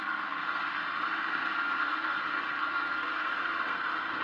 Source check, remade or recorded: remade